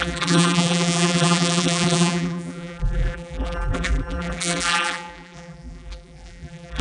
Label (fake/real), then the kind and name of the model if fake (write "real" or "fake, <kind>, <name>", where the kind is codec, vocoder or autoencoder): fake, vocoder, BigVGAN v2